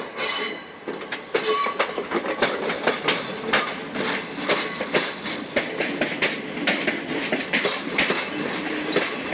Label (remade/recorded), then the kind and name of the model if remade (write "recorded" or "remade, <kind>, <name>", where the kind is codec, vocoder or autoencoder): recorded